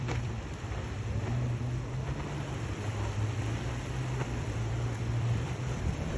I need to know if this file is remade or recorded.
remade